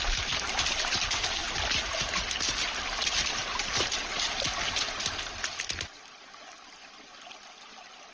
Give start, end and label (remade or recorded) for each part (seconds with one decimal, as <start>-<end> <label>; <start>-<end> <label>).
0.0-8.1 recorded